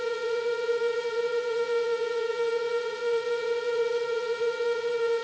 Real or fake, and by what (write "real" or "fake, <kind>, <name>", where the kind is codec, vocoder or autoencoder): fake, vocoder, Vocos